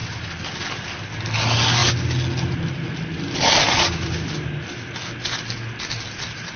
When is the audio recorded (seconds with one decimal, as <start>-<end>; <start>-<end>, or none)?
0.0-6.6